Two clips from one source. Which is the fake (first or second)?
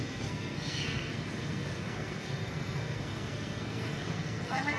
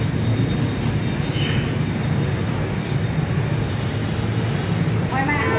first